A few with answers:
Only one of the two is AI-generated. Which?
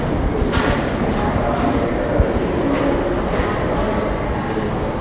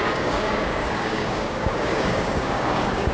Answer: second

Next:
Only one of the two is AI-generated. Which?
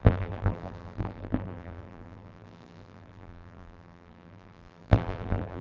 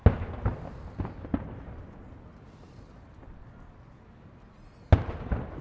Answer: first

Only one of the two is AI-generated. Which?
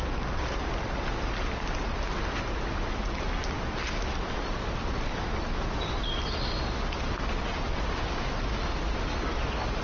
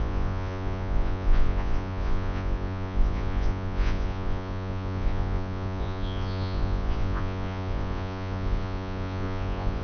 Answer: second